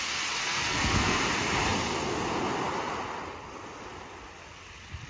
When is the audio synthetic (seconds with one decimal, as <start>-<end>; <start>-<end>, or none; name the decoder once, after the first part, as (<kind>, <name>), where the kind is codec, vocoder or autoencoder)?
0.4-1.2 (codec, SNAC)